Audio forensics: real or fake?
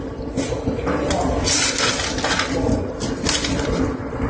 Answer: real